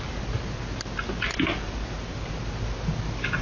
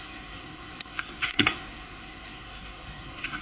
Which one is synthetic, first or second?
second